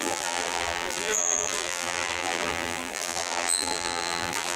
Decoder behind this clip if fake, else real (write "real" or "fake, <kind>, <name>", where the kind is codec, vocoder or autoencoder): fake, vocoder, BigVGAN v2